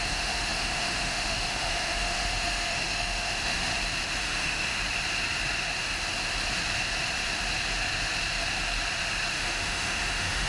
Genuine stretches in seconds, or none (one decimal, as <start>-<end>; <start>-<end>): 3.7-4.2; 4.7-9.3

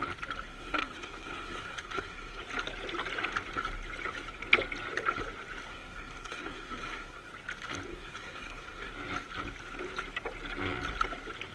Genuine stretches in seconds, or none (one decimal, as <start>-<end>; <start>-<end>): 0.0-0.5; 2.4-5.7; 7.3-7.9; 8.9-11.5

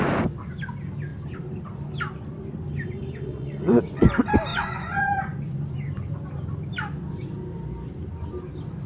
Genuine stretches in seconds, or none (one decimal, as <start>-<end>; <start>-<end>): 0.0-3.3; 4.1-4.5; 6.1-8.9

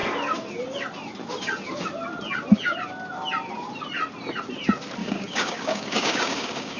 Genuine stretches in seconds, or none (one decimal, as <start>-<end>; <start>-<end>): 0.0-5.0

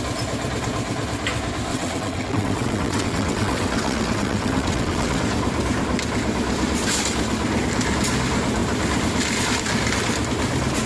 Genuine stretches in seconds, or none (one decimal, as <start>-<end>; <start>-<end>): 0.0-1.7; 5.2-10.9

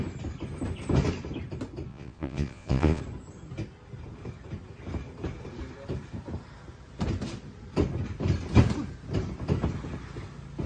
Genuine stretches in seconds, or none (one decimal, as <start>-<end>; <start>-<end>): 0.0-1.9; 3.0-10.7

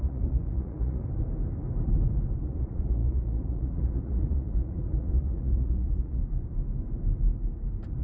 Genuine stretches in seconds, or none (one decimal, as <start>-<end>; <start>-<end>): 1.0-2.4; 6.2-8.0

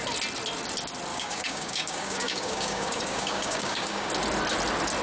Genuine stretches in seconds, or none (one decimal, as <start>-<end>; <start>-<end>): 0.0-1.1; 4.1-5.0